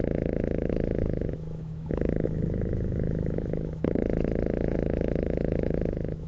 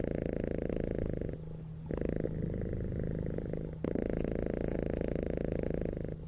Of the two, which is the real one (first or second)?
second